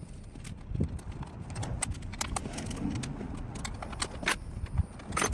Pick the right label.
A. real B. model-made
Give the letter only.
A